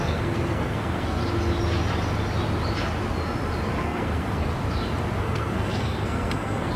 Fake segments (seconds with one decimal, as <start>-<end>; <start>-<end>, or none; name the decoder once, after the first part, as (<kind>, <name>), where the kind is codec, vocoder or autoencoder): 0.0-1.2 (codec, SNAC); 3.8-4.5; 5.2-6.8